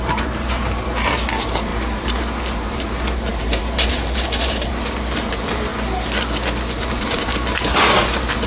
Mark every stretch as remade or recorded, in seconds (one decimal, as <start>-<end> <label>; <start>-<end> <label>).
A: 0.0-5.7 remade; 5.7-6.8 recorded; 6.8-8.5 remade